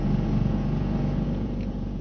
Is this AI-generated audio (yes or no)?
yes